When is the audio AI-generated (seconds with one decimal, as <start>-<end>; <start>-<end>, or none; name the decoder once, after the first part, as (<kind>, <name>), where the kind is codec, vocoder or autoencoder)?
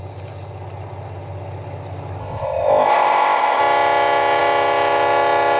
2.2-3.6 (codec, ZipCodec)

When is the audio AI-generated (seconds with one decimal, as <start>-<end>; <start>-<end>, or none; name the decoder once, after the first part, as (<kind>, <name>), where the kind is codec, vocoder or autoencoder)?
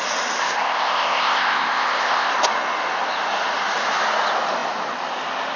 0.4-2.3 (codec, ZipCodec)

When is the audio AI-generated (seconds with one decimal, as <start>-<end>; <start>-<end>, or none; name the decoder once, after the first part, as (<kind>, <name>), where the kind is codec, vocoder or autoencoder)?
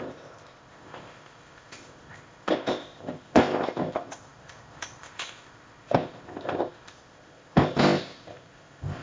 0.0-9.0 (codec, ZipCodec)